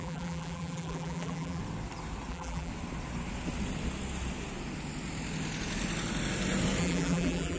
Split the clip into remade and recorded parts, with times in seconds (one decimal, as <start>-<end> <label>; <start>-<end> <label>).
0.0-1.6 remade; 1.6-2.3 recorded; 2.3-2.7 remade; 2.7-6.8 recorded; 6.8-7.6 remade